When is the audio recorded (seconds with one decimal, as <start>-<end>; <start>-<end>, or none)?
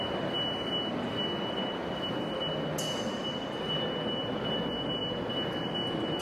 0.0-6.2